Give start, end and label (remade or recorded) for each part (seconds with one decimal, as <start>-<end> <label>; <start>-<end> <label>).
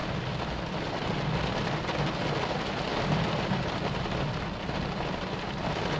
0.0-6.0 recorded